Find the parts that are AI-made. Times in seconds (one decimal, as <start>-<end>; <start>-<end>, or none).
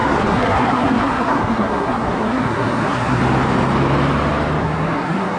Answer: 0.0-3.2; 4.6-5.4